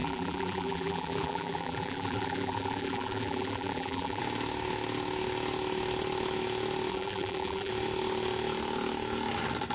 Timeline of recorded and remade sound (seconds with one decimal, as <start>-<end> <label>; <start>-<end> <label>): 0.0-4.2 remade; 4.2-6.9 recorded; 6.9-7.7 remade; 7.7-9.7 recorded